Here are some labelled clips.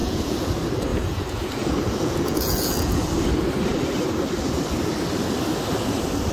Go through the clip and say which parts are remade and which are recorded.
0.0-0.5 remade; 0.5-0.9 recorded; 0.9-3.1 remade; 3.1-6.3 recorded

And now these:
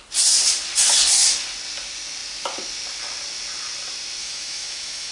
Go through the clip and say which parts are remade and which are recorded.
0.0-4.2 recorded; 4.2-5.1 remade

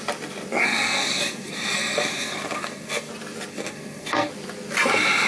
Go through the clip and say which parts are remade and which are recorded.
0.0-0.6 recorded; 0.6-3.1 remade; 3.1-3.5 recorded; 3.5-4.3 remade; 4.3-5.3 recorded

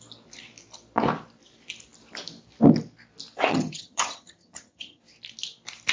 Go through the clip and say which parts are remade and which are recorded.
0.0-3.5 recorded; 3.5-5.0 remade; 5.0-5.9 recorded

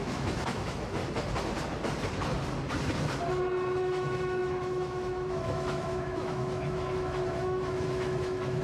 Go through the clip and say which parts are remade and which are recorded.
0.0-1.0 remade; 1.0-3.8 recorded; 3.8-8.6 remade

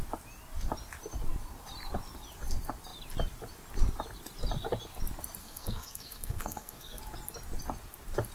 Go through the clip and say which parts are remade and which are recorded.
0.0-5.4 recorded; 5.4-7.0 remade; 7.0-8.3 recorded

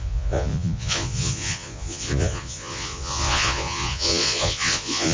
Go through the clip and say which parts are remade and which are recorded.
0.0-5.1 remade